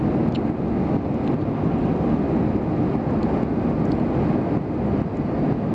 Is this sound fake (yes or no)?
no